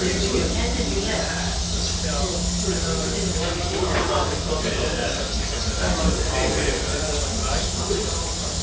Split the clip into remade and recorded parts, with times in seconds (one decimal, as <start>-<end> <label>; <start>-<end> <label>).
0.0-8.6 recorded